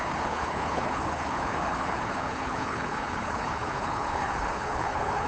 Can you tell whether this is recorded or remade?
remade